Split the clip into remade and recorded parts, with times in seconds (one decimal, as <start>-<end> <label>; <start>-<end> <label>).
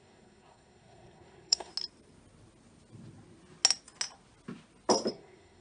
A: 0.0-1.7 remade; 1.7-5.1 recorded; 5.1-5.6 remade